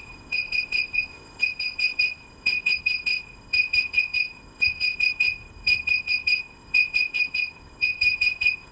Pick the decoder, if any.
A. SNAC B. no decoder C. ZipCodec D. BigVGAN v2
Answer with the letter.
C